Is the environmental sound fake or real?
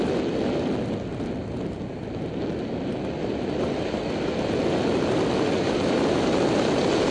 real